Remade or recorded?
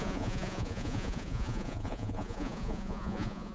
remade